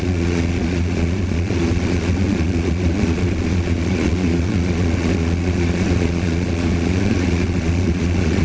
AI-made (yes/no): yes